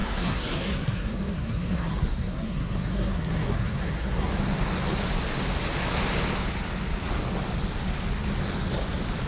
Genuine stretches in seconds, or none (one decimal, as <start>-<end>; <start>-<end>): 4.3-9.3